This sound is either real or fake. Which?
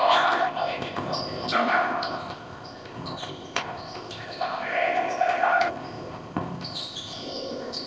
fake